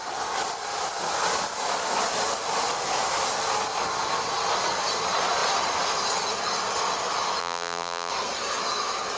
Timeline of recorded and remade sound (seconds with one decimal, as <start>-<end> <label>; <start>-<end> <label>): 0.0-7.4 recorded; 7.4-8.1 remade; 8.1-9.2 recorded